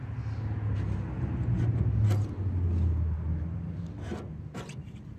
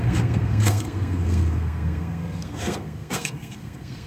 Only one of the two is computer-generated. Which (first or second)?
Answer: second